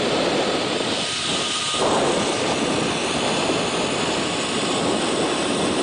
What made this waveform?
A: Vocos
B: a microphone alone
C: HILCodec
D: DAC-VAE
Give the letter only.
B